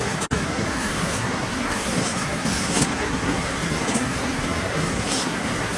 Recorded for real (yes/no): no